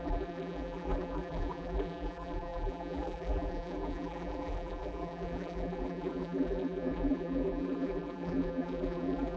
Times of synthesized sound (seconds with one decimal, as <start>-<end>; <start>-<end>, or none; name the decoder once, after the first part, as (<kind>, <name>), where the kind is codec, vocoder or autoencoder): 0.0-9.4 (vocoder, BigVGAN v2)